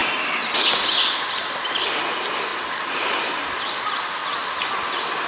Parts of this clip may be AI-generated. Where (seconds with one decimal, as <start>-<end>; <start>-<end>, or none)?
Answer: none